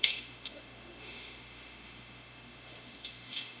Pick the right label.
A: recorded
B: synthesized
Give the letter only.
B